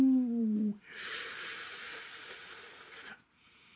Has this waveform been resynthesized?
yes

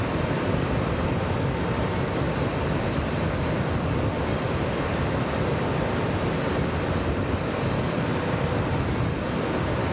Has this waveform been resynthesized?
no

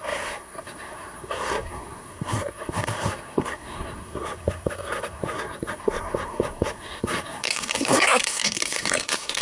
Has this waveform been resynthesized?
yes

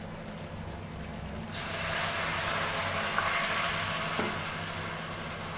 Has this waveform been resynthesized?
no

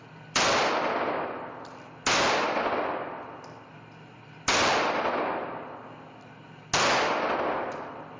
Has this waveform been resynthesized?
no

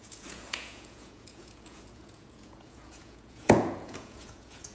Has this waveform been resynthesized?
yes